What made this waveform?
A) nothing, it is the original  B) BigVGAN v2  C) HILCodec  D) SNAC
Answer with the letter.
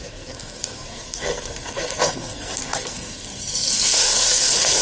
D